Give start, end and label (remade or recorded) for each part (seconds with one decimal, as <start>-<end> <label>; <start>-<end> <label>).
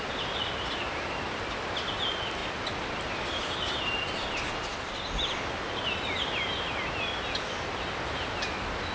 0.0-8.9 recorded